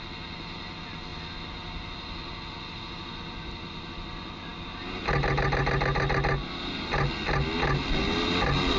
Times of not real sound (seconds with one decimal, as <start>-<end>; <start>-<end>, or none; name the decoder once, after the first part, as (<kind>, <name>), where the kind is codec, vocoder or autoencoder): none